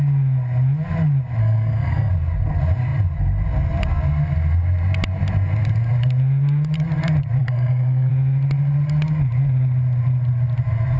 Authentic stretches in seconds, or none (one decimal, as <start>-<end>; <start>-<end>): 0.0-1.4; 2.1-7.4; 8.1-11.0